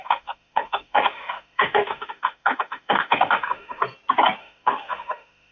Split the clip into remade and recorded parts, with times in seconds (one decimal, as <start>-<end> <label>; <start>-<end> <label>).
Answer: 0.0-3.8 remade; 3.8-4.4 recorded; 4.4-5.5 remade